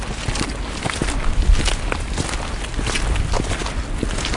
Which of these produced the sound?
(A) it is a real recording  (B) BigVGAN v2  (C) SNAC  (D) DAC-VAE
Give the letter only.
A